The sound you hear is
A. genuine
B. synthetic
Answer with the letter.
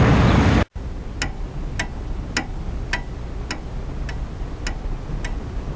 A